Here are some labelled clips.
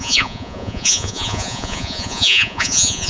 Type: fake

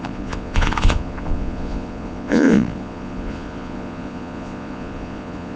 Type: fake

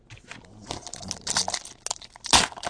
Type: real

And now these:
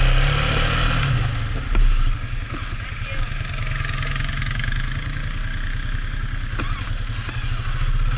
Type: real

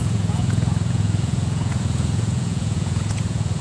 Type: fake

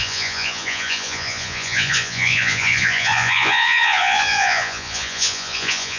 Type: fake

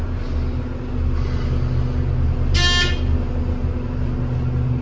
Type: real